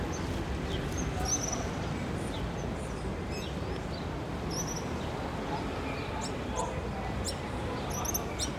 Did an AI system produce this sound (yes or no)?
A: no